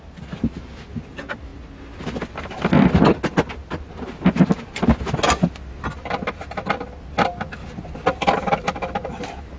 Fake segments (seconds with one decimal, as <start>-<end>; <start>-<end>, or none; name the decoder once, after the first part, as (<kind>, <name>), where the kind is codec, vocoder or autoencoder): none